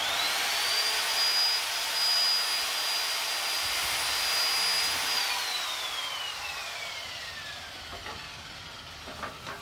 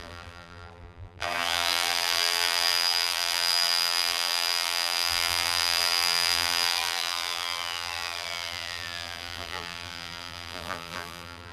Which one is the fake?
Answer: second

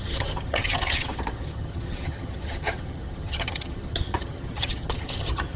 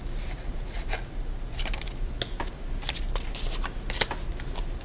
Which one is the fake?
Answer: first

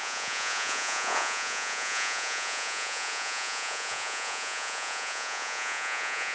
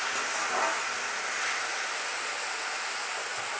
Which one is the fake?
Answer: first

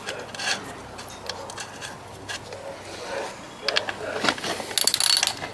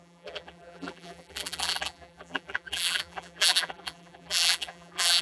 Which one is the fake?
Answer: second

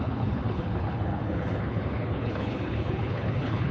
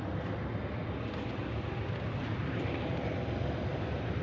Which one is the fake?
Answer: first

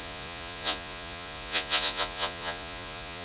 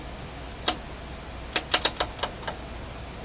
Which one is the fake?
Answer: first